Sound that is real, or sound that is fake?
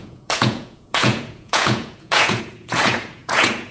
fake